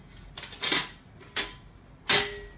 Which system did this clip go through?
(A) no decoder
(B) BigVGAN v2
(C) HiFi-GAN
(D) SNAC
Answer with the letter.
A